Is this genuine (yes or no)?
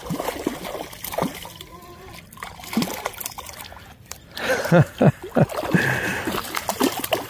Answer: yes